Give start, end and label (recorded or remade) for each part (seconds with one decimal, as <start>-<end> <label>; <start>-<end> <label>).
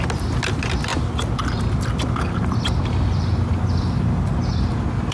0.0-5.1 recorded